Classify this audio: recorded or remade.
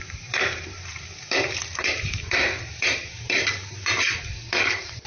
remade